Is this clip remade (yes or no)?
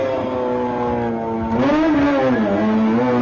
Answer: no